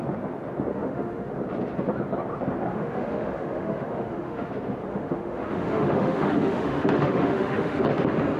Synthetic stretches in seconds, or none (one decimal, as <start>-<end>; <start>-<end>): 0.7-1.3; 2.7-4.5; 4.9-7.8